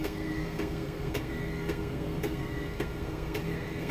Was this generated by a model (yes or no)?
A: yes